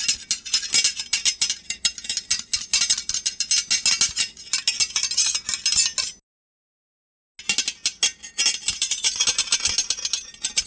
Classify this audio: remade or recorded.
recorded